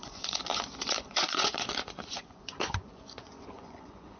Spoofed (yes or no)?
yes